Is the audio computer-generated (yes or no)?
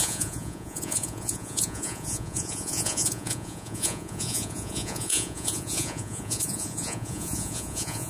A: yes